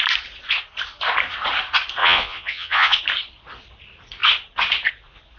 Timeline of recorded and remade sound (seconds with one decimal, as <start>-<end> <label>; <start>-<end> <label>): 0.0-2.0 recorded; 2.0-3.0 remade; 3.0-5.4 recorded